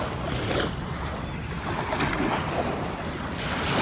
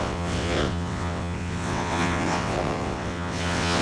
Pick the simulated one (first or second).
second